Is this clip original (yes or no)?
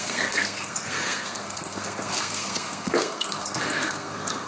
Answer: no